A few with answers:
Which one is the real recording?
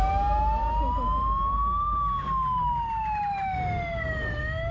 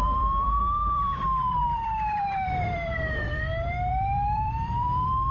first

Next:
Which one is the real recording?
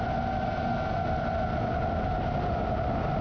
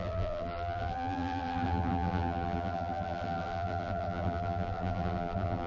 first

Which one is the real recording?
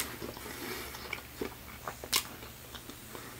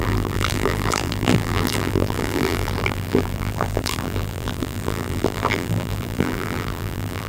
first